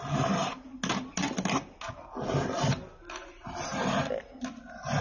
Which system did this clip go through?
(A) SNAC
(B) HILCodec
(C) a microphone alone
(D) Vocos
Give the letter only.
C